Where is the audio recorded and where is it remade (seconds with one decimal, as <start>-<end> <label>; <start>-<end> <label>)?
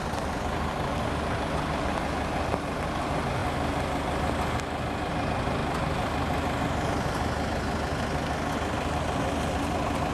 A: 0.0-10.1 recorded